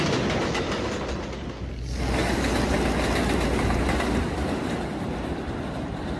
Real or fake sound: real